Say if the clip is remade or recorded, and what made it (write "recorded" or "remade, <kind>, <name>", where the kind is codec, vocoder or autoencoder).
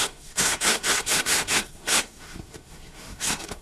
remade, codec, SNAC